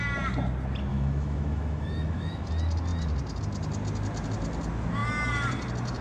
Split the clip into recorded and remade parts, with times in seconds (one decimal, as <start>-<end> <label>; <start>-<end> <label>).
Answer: 0.0-0.9 recorded; 0.9-2.5 remade; 2.5-6.0 recorded

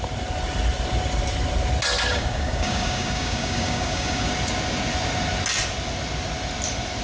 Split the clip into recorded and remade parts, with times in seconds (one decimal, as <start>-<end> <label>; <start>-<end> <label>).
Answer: 0.0-2.1 recorded; 2.1-4.3 remade; 4.3-7.0 recorded